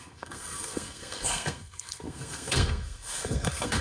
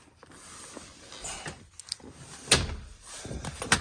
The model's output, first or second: first